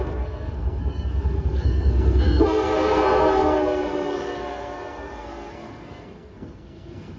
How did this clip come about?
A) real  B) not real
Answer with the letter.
B